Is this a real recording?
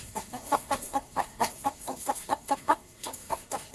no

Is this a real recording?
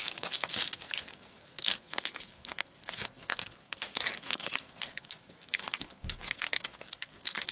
no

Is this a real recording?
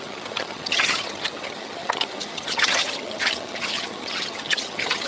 no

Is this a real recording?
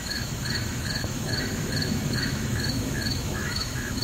no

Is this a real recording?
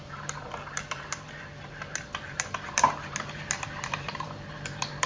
no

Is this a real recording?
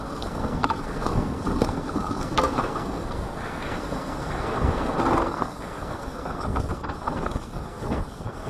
no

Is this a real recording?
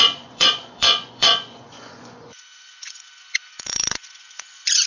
no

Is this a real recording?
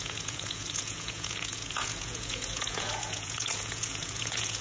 no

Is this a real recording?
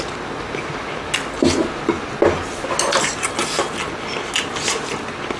yes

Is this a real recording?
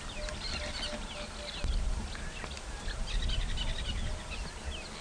yes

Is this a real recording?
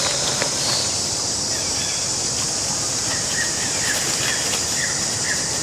yes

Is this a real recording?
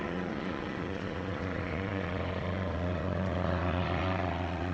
no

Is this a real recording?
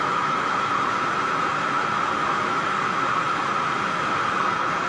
yes